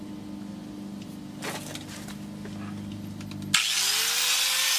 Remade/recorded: recorded